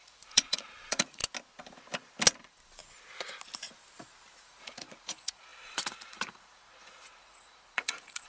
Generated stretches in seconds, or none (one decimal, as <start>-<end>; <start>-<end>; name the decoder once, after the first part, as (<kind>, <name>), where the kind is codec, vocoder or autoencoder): 0.0-1.2 (vocoder, Vocos); 2.4-2.8; 4.4-8.3